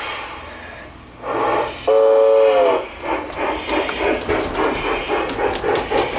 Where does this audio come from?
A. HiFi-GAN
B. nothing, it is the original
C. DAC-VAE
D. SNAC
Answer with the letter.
B